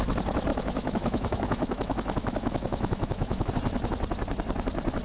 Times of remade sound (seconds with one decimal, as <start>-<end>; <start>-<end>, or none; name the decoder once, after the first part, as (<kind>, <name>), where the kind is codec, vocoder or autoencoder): 0.5-3.5 (autoencoder, DAC-VAE)